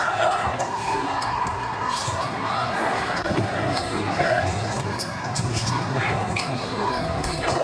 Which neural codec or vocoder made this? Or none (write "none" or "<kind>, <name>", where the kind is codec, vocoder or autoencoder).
codec, SNAC